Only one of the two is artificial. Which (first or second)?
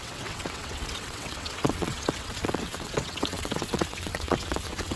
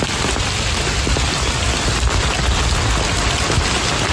first